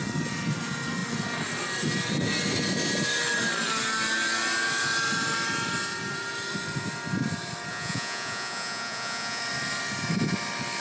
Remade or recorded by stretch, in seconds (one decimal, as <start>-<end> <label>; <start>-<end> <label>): 0.0-7.7 recorded; 7.7-9.4 remade; 9.4-10.8 recorded

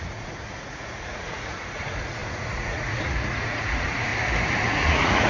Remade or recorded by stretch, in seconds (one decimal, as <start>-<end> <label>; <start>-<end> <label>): 0.0-4.1 remade; 4.1-4.6 recorded; 4.6-5.3 remade

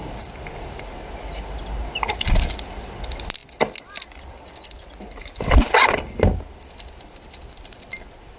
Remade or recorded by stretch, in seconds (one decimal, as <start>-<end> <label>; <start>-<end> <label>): 0.0-8.4 recorded